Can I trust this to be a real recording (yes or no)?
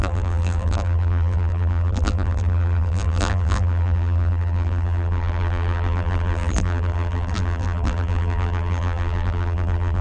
no